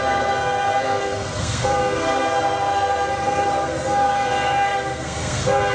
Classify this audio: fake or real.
fake